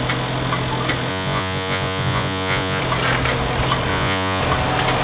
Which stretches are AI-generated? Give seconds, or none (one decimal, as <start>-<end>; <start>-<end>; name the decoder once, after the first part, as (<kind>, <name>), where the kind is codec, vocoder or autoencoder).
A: 1.1-2.8 (vocoder, Vocos); 3.9-4.4

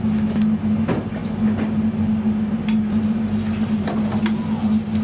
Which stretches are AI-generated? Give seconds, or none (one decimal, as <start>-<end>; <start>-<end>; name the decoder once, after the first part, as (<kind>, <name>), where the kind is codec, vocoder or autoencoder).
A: none

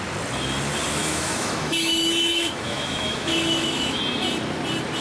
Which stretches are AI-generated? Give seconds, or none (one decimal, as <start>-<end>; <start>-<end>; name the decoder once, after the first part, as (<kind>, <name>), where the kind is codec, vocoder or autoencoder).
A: 1.0-4.0 (autoencoder, DAC-VAE)

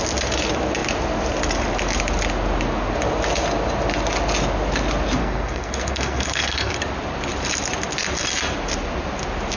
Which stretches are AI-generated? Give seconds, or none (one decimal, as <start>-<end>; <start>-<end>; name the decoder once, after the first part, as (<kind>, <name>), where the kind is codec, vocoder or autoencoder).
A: 5.2-6.7 (codec, SNAC)